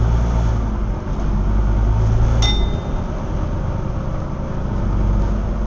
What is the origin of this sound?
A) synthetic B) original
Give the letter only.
B